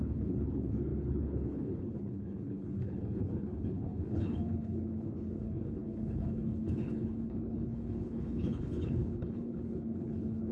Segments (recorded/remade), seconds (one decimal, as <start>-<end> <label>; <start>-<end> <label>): 0.0-10.5 remade